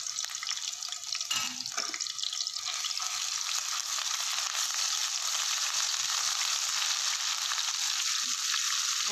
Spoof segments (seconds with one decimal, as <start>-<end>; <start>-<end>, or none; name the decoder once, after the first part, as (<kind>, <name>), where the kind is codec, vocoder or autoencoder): none